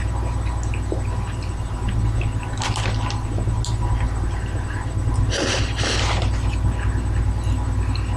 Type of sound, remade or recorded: recorded